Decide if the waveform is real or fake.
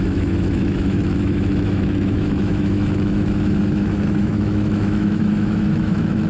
fake